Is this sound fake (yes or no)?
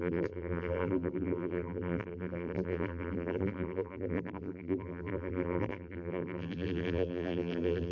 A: yes